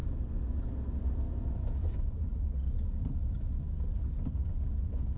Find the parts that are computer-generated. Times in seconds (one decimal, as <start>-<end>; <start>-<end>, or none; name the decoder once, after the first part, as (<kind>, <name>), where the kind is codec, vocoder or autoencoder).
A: none

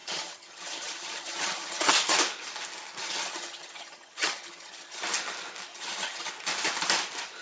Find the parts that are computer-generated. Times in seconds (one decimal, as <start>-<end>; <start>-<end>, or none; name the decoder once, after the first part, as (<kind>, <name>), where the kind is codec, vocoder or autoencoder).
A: 0.0-1.9 (vocoder, HiFi-GAN); 3.0-5.0; 5.7-6.3

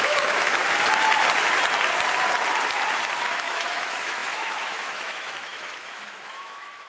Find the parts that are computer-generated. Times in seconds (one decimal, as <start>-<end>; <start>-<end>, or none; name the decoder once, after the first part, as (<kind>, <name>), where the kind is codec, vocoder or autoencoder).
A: 0.0-0.6 (autoencoder, DAC-VAE); 3.2-6.9